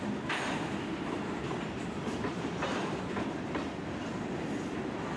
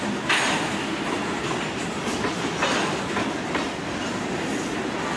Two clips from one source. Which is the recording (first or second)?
second